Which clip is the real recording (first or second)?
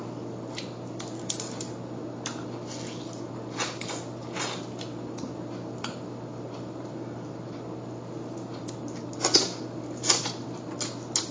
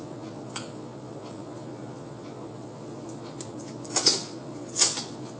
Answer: first